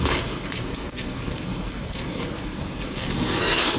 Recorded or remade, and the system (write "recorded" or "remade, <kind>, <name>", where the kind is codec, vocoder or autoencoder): remade, codec, SNAC